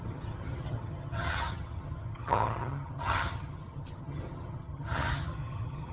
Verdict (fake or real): fake